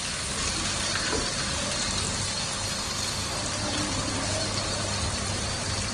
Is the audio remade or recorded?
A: recorded